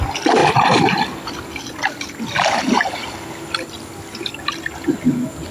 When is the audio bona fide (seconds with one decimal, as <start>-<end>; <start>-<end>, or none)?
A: 0.0-5.5